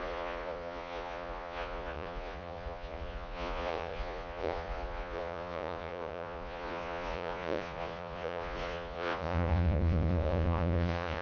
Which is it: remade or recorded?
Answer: remade